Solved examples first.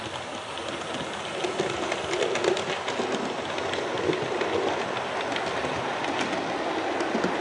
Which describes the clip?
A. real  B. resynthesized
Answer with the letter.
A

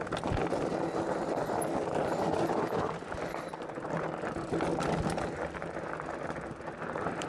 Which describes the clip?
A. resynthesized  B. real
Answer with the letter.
B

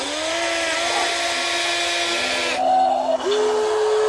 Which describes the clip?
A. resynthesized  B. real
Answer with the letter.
B